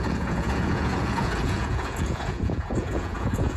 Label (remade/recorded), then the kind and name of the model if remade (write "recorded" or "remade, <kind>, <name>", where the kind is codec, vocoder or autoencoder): remade, vocoder, Vocos